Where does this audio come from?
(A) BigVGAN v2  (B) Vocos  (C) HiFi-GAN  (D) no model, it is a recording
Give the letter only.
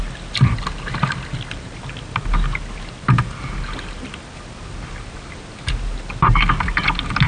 D